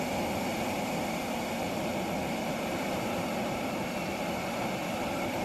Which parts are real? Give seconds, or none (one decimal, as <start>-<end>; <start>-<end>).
0.0-0.5; 3.7-5.4